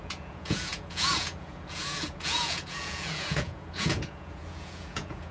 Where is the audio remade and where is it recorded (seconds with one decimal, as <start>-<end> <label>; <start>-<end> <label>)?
0.0-5.3 remade